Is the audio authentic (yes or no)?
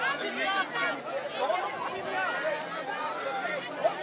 yes